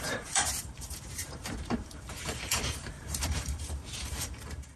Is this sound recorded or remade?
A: remade